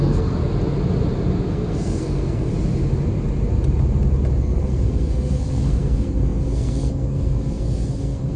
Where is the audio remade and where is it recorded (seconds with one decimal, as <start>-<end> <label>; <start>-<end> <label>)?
0.0-0.4 remade; 0.4-1.5 recorded; 1.5-2.5 remade; 2.5-4.4 recorded; 4.4-8.4 remade